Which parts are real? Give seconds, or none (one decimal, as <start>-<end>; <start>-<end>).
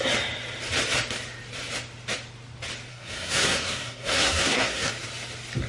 0.0-2.9; 4.9-5.7